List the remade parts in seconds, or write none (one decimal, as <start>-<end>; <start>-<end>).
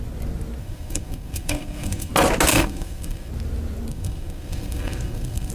0.6-2.1; 2.5-3.3; 3.9-5.5